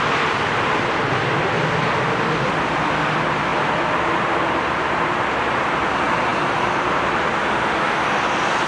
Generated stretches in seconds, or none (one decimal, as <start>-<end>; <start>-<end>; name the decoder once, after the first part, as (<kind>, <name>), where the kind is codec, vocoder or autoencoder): none

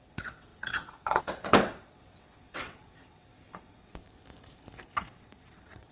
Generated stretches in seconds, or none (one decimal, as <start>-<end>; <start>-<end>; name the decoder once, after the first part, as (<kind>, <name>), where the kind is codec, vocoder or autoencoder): 0.0-4.0 (vocoder, WaveNeXt); 5.0-5.9

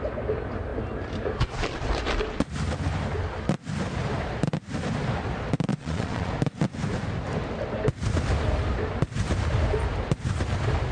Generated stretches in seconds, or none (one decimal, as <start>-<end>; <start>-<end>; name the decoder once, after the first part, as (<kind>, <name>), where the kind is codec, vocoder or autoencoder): 5.7-6.3 (vocoder, Vocos)

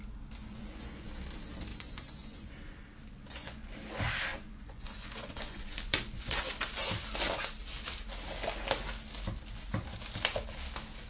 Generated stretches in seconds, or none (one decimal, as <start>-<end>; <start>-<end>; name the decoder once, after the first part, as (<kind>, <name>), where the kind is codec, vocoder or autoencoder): 0.4-1.1 (vocoder, Vocos); 1.7-2.5; 3.2-3.7; 4.3-6.4

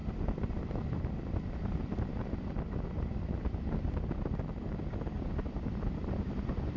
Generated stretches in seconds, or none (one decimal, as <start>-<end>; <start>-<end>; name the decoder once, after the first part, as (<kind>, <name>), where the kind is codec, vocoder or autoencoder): 0.0-4.1 (vocoder, BigVGAN v2)

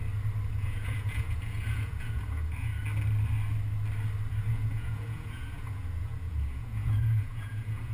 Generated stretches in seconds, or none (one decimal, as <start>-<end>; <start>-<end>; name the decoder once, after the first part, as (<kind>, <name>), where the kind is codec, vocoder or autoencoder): 0.5-2.7 (vocoder, Vocos); 4.4-7.9

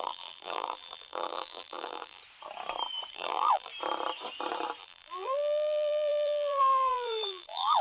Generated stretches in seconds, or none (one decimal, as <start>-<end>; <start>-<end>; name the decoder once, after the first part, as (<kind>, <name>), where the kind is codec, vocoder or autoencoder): 0.0-2.2 (vocoder, BigVGAN v2); 3.1-3.7; 4.8-7.8

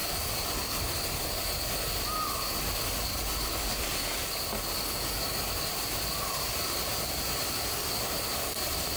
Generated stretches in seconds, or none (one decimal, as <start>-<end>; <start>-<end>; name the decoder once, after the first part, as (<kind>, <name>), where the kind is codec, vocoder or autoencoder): none